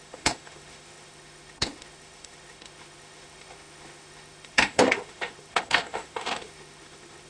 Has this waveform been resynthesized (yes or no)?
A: yes